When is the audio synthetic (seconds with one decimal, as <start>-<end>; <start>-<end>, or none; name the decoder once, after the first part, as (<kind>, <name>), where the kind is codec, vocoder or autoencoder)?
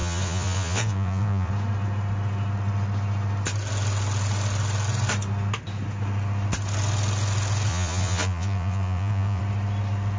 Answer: 0.0-1.5 (vocoder, Vocos); 7.7-9.4